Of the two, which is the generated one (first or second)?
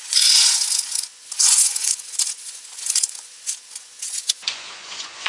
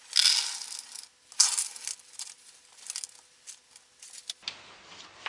first